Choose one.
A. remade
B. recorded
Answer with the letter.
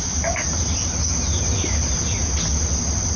B